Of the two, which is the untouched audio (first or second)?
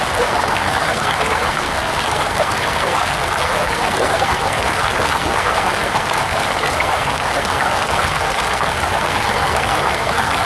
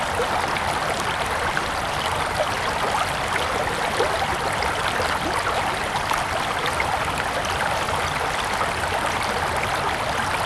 second